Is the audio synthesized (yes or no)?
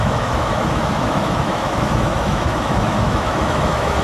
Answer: yes